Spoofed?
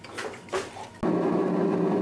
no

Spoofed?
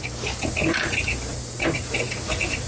no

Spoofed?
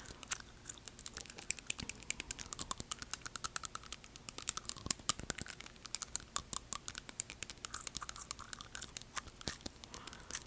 no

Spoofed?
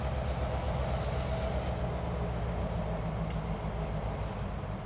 no